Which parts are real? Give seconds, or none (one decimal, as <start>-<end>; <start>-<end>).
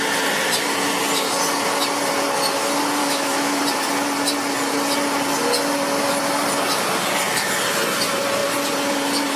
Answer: 0.0-3.0; 3.6-9.4